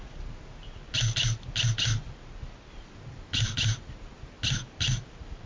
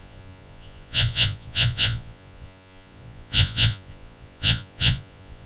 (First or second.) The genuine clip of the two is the first